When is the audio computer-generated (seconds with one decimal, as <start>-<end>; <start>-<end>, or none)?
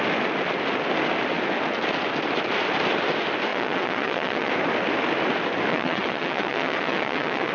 3.5-4.5; 5.7-7.5